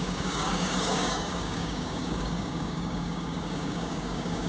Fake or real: fake